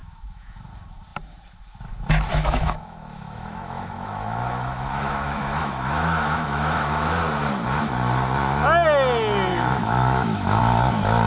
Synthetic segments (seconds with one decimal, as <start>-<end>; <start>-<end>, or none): 0.0-0.6; 2.3-7.1; 9.5-10.6